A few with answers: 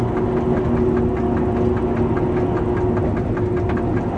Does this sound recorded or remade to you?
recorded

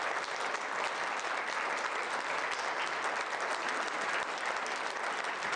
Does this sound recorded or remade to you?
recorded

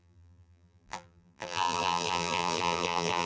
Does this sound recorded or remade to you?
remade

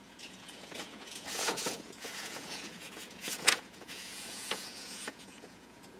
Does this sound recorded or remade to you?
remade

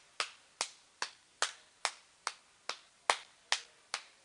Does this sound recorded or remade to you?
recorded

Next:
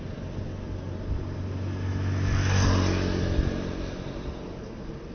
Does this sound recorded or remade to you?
recorded